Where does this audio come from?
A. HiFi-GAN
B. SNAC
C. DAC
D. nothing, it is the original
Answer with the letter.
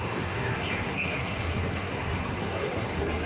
B